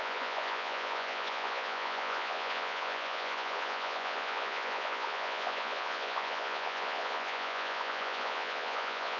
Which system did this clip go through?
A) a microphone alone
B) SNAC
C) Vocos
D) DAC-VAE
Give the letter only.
C